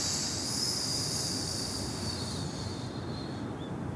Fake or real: real